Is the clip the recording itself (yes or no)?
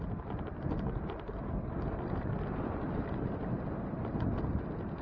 yes